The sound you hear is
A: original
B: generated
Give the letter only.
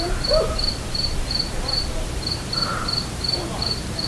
B